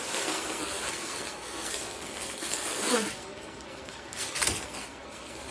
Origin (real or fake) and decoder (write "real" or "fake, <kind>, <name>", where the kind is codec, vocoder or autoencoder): fake, codec, SNAC